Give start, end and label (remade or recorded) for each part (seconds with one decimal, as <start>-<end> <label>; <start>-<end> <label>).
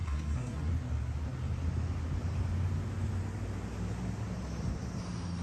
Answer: 0.0-0.7 remade; 0.7-5.4 recorded